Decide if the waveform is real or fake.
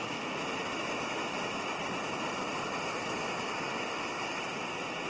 real